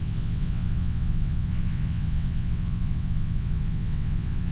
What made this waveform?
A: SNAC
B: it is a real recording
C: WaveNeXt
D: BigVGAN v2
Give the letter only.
C